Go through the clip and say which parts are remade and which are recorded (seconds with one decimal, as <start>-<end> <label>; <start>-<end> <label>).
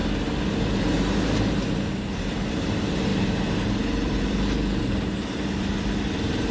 0.0-2.5 recorded; 2.5-3.1 remade; 3.1-3.8 recorded; 3.8-6.5 remade